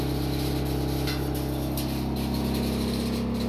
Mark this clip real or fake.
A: real